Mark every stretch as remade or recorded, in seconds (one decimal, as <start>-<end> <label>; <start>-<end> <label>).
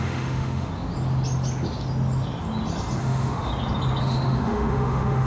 0.0-0.7 remade; 0.7-3.0 recorded; 3.0-3.5 remade; 3.5-4.0 recorded; 4.0-5.3 remade